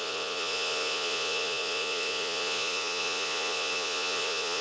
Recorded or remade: remade